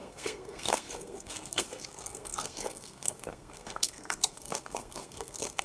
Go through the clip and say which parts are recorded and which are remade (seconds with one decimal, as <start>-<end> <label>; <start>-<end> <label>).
0.0-5.6 remade